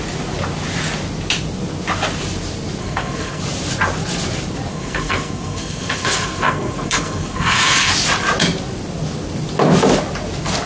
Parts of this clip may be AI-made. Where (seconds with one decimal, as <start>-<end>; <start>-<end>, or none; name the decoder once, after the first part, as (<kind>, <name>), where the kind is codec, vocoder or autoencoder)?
2.8-3.4 (codec, SNAC); 4.7-7.9